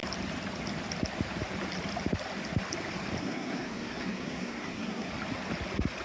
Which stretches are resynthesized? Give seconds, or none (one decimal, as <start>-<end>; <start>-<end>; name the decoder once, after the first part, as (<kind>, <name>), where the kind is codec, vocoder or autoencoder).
3.2-5.1 (codec, SNAC)